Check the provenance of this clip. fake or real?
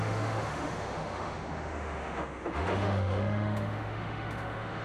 fake